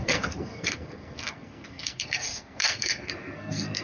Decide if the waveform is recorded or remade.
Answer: remade